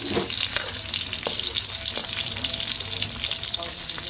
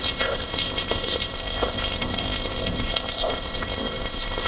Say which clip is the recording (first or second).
first